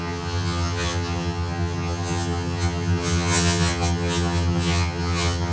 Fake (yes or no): yes